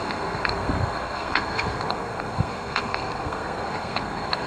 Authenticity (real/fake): fake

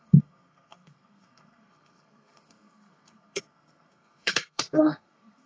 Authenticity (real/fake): fake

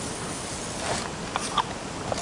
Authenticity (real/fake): real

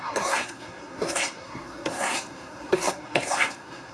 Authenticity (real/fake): fake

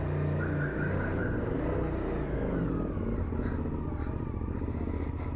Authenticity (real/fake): real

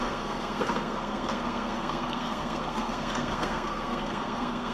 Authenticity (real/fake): fake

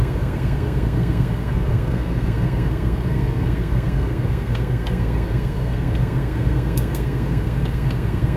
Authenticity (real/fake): fake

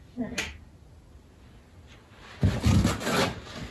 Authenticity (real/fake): real